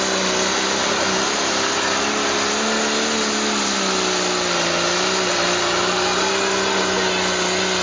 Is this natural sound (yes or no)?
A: yes